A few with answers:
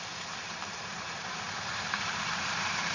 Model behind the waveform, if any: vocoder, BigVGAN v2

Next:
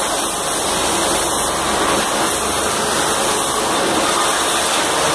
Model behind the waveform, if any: none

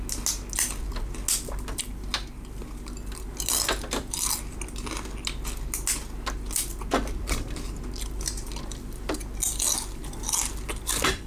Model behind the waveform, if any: none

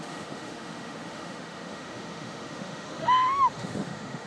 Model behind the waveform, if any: autoencoder, DAC-VAE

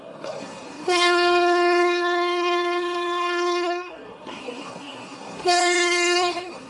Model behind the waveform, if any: codec, SNAC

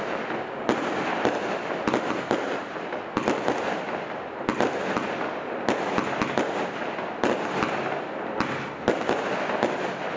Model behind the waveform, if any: none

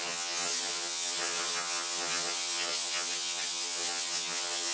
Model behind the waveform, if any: vocoder, HiFi-GAN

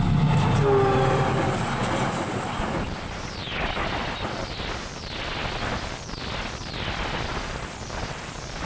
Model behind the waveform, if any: none